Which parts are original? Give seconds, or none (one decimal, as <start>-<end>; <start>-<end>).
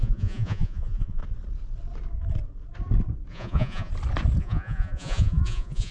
1.2-3.3; 3.9-4.4